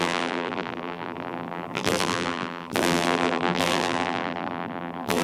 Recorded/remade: remade